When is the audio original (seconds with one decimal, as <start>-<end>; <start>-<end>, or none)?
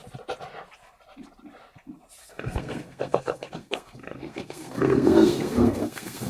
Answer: 0.0-2.2